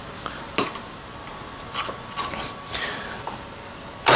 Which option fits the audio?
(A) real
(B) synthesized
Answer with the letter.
A